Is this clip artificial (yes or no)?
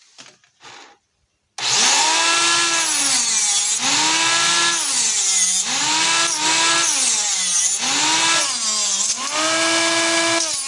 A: no